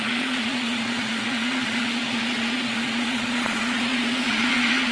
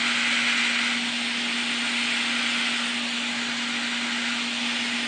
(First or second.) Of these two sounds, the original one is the second